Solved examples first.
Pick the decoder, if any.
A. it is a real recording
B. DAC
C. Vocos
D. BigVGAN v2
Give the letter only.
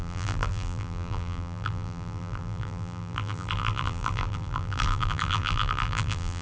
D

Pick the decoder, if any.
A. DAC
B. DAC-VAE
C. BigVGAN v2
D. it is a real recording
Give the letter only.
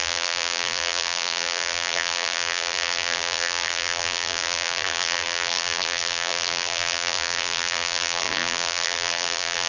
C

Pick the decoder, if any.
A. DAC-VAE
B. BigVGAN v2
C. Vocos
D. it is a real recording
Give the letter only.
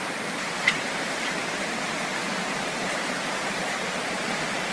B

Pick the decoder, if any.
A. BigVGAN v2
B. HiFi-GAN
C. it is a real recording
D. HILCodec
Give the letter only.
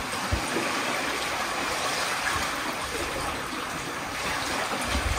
C